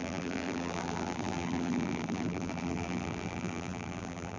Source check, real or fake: fake